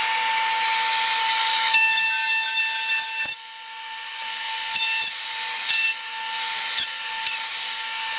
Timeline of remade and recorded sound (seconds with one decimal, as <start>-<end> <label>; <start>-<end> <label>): 0.0-1.2 recorded; 1.2-2.6 remade; 2.6-8.2 recorded

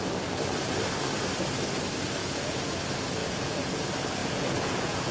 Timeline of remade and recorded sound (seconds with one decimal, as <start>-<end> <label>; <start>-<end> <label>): 0.0-2.2 recorded; 2.2-2.8 remade; 2.8-3.2 recorded; 3.2-3.8 remade; 3.8-4.2 recorded; 4.2-5.1 remade